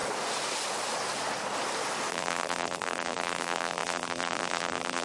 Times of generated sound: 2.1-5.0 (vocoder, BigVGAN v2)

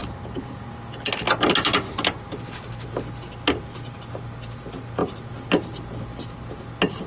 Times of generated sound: 0.0-0.6 (vocoder, BigVGAN v2)